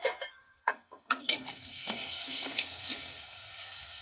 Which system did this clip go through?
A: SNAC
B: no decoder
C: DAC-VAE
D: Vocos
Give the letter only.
A